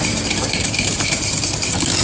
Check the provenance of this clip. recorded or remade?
remade